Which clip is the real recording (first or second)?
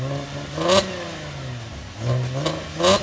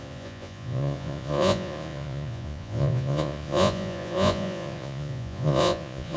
first